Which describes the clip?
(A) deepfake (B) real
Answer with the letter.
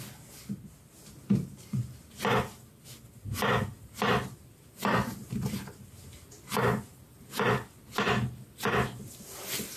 B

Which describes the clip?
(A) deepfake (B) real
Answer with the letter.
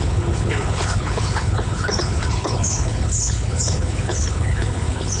A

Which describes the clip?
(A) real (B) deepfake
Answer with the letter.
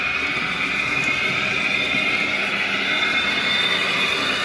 A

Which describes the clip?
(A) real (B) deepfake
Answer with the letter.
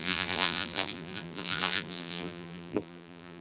B